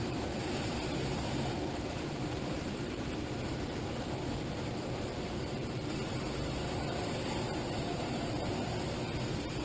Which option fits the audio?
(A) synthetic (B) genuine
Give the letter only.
A